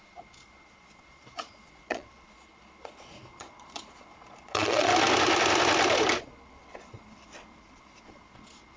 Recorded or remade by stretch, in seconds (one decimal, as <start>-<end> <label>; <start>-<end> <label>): 0.0-4.9 remade; 4.9-6.2 recorded; 6.2-8.8 remade